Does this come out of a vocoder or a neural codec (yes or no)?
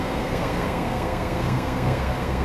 yes